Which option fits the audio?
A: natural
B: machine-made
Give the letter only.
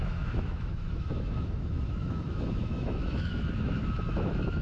B